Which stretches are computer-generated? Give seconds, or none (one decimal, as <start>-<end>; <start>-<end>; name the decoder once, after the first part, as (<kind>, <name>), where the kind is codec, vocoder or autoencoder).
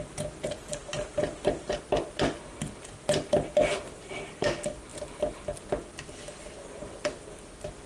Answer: none